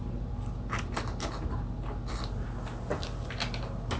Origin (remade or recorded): recorded